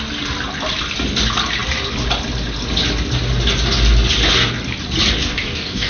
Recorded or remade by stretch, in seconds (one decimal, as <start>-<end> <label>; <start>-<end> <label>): 0.0-5.2 recorded; 5.2-5.9 remade

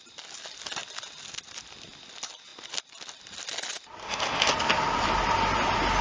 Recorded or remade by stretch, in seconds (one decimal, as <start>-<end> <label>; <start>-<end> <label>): 0.0-4.0 recorded; 4.0-4.5 remade; 4.5-6.0 recorded

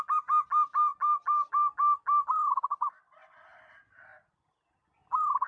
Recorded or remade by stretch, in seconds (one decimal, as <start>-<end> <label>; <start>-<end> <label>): 0.0-5.5 recorded

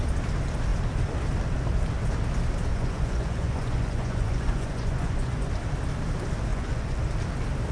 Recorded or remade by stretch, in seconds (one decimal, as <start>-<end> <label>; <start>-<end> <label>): 0.0-2.7 recorded; 2.7-5.5 remade; 5.5-6.5 recorded; 6.5-7.0 remade; 7.0-7.7 recorded

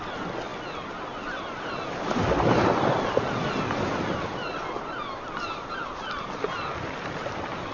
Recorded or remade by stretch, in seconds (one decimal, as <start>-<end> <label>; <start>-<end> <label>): 0.0-7.7 recorded

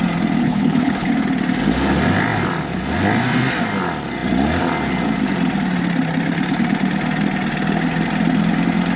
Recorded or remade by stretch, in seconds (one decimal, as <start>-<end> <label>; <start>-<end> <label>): 0.0-0.4 recorded; 0.4-1.1 remade; 1.1-9.0 recorded

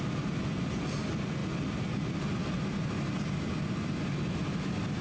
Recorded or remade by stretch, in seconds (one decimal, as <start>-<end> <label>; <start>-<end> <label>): 0.0-5.0 recorded

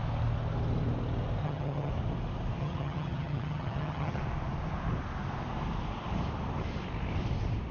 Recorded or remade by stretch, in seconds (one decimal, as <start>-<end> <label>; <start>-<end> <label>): 0.0-1.4 recorded; 1.4-1.9 remade; 1.9-2.6 recorded; 2.6-4.2 remade; 4.2-7.7 recorded